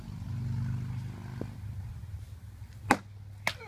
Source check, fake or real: real